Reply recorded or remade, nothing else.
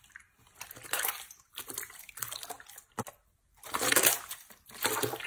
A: recorded